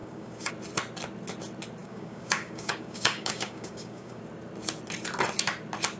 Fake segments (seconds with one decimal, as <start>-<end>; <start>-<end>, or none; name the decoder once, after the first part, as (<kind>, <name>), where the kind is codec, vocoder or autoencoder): 0.0-0.5 (codec, DAC); 1.8-4.2

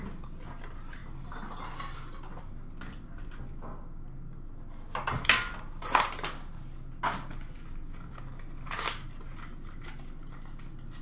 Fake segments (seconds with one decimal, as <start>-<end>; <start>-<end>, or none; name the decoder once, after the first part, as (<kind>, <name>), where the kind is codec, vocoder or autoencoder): none

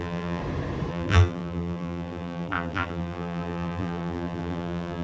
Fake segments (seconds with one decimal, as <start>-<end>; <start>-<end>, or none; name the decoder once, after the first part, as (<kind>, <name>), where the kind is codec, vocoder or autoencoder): 0.0-0.4 (vocoder, BigVGAN v2); 0.9-5.0

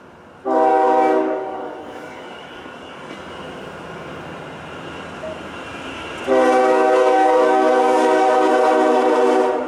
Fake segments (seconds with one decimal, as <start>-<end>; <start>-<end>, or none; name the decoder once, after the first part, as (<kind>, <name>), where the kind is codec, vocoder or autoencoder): 0.7-3.1 (codec, DAC); 6.6-8.5

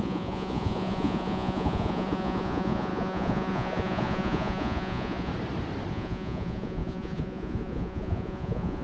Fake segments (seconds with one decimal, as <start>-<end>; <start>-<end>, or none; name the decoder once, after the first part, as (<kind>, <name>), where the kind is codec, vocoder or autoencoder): 0.0-5.3 (vocoder, Vocos); 5.9-8.8

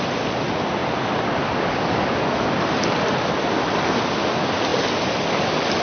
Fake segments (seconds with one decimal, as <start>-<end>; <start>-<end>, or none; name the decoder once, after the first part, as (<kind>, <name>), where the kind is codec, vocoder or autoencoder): none

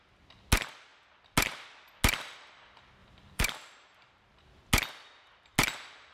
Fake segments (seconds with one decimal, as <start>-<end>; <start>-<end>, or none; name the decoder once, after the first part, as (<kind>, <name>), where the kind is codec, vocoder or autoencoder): 3.0-4.6 (vocoder, BigVGAN v2)